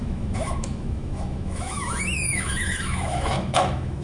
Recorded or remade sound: remade